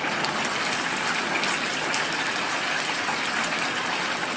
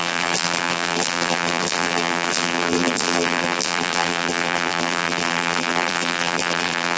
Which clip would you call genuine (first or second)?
first